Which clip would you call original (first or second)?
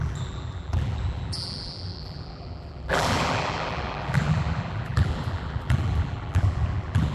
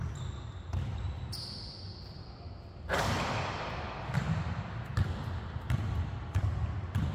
second